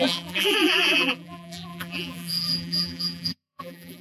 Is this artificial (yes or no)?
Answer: yes